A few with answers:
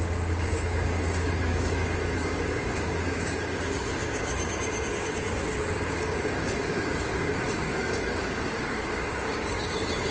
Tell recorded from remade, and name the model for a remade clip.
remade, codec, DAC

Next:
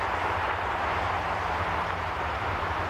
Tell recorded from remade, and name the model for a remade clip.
recorded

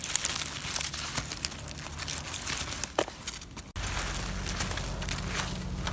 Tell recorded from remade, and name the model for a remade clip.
recorded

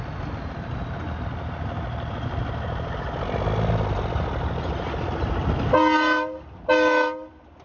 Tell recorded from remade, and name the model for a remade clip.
recorded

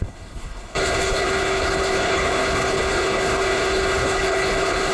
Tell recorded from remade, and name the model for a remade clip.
remade, codec, HILCodec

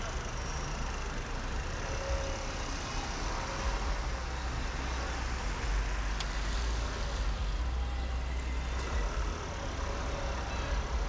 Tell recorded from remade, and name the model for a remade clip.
recorded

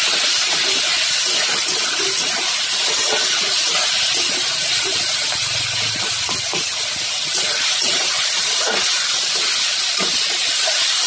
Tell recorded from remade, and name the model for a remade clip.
recorded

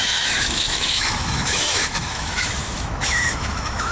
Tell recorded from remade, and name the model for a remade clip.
remade, autoencoder, DAC-VAE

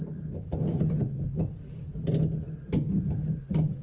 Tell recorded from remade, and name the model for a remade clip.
recorded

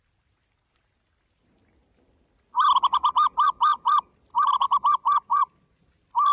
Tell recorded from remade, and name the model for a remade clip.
recorded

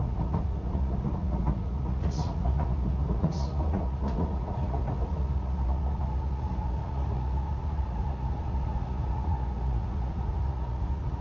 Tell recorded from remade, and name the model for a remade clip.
remade, vocoder, Vocos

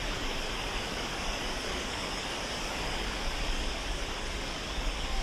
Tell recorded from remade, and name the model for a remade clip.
remade, codec, DAC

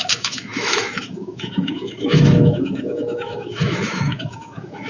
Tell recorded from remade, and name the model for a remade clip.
remade, autoencoder, DAC-VAE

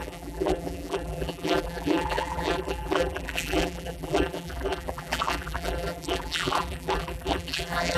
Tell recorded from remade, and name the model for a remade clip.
remade, vocoder, BigVGAN v2